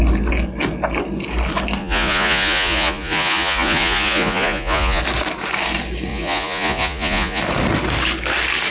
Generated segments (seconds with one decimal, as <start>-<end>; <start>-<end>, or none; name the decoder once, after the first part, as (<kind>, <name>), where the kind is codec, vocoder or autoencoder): 1.8-5.0 (vocoder, Vocos); 6.1-7.4